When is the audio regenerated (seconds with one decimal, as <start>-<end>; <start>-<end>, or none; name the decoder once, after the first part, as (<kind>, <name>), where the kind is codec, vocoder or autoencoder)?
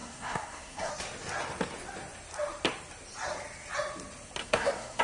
0.0-0.9 (codec, SNAC); 4.4-5.0